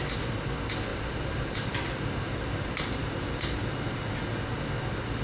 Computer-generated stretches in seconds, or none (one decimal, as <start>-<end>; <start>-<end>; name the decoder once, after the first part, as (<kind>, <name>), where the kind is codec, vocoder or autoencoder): 0.9-4.0 (vocoder, BigVGAN v2)